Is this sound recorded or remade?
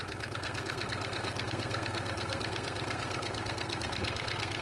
remade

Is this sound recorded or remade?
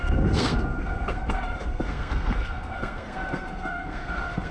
remade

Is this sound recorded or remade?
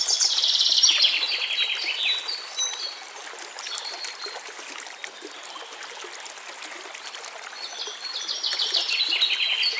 recorded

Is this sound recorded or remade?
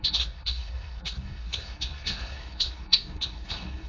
remade